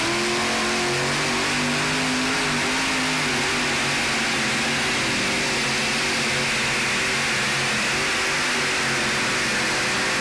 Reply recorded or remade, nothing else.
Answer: recorded